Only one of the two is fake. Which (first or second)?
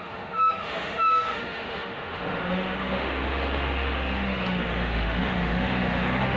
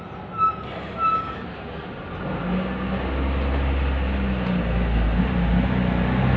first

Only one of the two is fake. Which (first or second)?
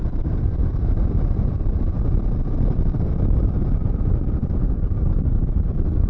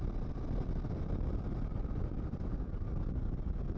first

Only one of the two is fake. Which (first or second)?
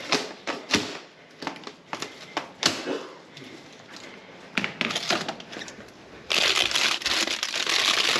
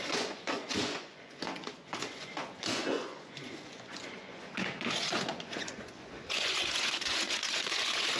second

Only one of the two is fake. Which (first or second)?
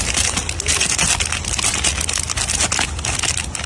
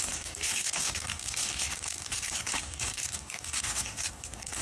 second